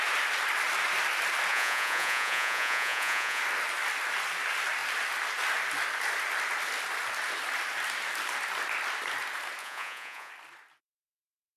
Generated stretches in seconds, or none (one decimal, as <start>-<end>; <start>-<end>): 1.5-3.4; 9.6-10.3